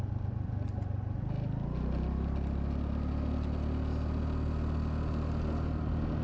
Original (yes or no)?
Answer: yes